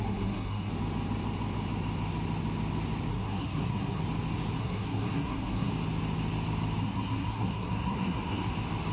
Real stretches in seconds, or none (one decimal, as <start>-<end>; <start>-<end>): 0.7-3.1; 4.0-4.6; 5.7-6.8; 8.5-8.9